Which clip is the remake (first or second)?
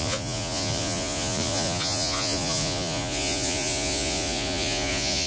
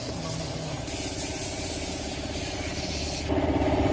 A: first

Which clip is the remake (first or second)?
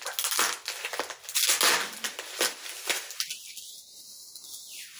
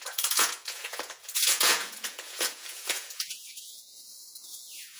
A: second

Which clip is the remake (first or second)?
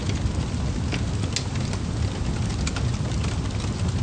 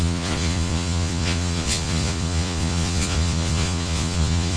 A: second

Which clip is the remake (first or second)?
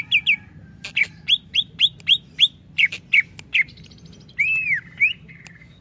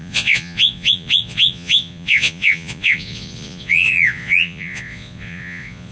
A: second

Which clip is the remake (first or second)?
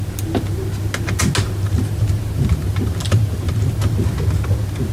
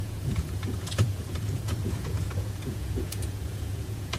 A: second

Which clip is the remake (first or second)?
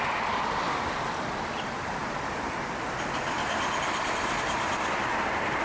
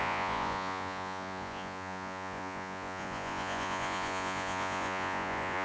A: second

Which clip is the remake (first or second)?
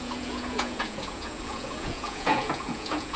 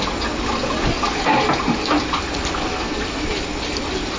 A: first